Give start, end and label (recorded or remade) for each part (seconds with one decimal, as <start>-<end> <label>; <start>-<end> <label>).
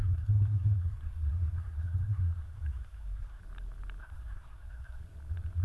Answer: 0.0-3.4 remade; 3.4-4.0 recorded; 4.0-5.0 remade; 5.0-5.6 recorded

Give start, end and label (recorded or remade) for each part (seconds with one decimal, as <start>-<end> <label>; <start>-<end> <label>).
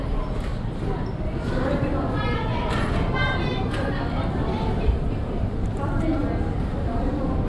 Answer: 0.0-0.5 remade; 0.5-5.0 recorded; 5.0-6.2 remade; 6.2-7.1 recorded; 7.1-7.5 remade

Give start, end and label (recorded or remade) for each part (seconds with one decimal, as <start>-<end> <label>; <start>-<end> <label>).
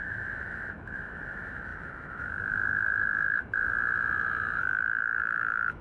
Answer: 0.0-5.8 remade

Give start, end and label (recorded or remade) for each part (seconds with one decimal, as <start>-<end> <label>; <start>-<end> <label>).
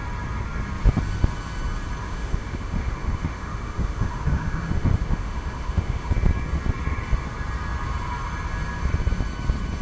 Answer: 0.0-2.0 recorded; 2.0-6.1 remade; 6.1-9.8 recorded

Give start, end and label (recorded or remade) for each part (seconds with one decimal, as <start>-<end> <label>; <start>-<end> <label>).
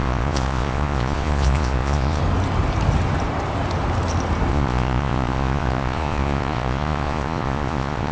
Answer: 0.0-2.2 remade; 2.2-4.5 recorded; 4.5-8.1 remade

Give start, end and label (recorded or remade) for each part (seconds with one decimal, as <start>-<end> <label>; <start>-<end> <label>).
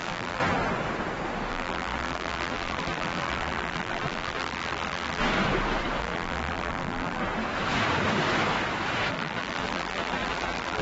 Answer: 0.0-0.4 remade; 0.4-1.5 recorded; 1.5-5.2 remade; 5.2-6.0 recorded; 6.0-7.2 remade; 7.2-9.1 recorded; 9.1-10.8 remade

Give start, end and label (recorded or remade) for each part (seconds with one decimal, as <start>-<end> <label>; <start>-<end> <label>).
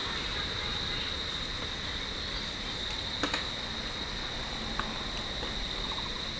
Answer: 0.0-6.4 recorded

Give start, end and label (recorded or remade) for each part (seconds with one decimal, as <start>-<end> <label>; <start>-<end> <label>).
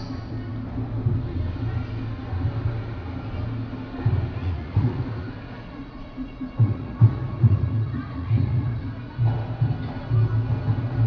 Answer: 0.0-4.4 recorded; 4.4-9.1 remade; 9.1-11.1 recorded